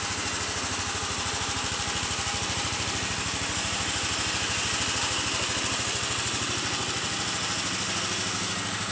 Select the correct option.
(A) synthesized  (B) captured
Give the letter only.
B